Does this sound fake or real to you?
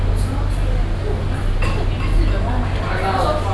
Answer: real